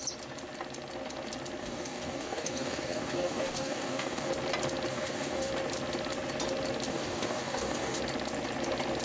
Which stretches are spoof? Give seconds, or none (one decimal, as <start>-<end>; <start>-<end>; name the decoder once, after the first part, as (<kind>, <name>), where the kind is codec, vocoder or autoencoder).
1.6-4.3 (codec, DAC); 4.9-5.5; 6.9-8.0

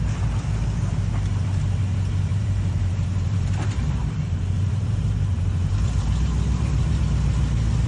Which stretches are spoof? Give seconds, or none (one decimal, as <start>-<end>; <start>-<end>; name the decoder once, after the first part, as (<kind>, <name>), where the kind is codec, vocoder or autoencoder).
2.3-7.0 (vocoder, BigVGAN v2)

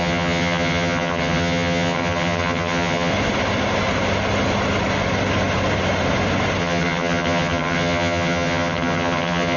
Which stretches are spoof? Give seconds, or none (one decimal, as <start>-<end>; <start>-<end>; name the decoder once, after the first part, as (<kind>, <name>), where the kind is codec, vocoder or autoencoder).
0.0-3.1 (vocoder, HiFi-GAN); 6.6-9.6

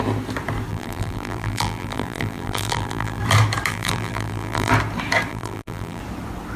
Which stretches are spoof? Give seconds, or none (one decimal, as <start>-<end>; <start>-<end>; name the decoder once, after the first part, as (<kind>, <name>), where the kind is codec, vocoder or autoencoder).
0.7-3.2 (vocoder, BigVGAN v2); 3.7-4.7; 5.3-6.0

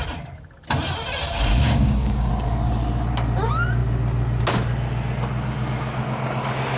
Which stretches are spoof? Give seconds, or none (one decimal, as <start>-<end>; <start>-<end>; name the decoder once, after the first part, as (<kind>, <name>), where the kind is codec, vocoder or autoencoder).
1.6-2.3 (codec, DAC)